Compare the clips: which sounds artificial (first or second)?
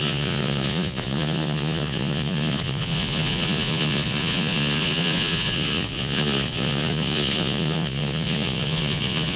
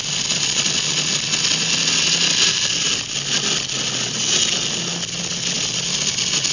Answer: first